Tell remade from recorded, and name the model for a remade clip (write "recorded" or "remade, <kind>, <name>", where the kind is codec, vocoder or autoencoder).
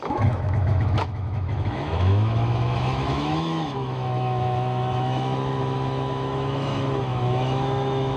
remade, autoencoder, DAC-VAE